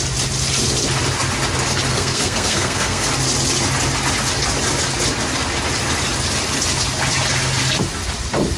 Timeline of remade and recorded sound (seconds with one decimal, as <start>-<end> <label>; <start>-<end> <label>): 0.0-1.9 recorded; 1.9-3.1 remade; 3.1-8.6 recorded